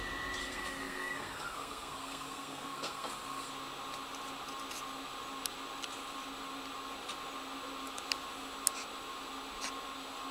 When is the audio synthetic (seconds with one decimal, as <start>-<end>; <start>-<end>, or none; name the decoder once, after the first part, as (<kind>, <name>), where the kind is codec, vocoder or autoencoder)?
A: 0.4-3.5 (codec, SNAC)